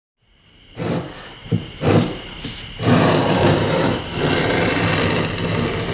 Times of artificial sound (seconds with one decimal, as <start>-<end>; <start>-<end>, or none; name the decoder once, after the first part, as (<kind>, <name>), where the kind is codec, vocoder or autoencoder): 1.4-4.9 (vocoder, BigVGAN v2)

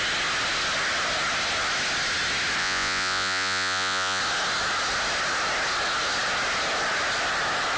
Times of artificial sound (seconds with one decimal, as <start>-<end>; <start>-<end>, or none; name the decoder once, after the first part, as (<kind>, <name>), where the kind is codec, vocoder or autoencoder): 2.6-4.2 (vocoder, Vocos)

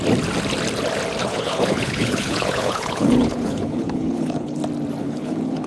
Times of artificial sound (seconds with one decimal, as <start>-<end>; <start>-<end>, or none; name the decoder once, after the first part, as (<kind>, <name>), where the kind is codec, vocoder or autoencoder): 1.2-4.6 (codec, HILCodec); 5.0-5.7

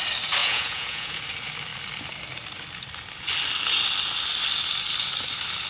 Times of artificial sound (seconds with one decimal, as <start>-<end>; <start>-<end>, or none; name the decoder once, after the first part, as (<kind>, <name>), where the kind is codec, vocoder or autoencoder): 0.4-1.2 (vocoder, Vocos)

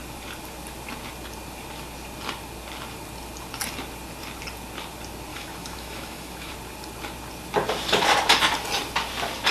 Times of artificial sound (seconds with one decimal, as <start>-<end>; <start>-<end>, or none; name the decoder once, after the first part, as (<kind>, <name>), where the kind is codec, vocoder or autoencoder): 5.3-6.5 (autoencoder, DAC-VAE)

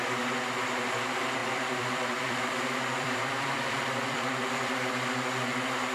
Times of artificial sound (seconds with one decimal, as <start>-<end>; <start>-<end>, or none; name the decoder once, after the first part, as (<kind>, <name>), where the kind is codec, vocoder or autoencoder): 1.4-4.9 (vocoder, BigVGAN v2)

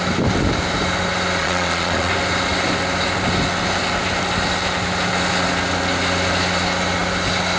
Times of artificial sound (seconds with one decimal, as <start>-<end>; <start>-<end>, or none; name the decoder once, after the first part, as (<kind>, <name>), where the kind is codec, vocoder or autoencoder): 1.4-2.1 (vocoder, Vocos)

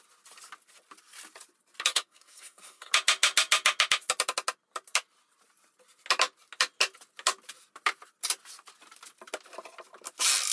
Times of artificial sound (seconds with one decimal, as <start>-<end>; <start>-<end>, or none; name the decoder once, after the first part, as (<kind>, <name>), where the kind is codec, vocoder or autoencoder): 1.9-2.9 (codec, SNAC)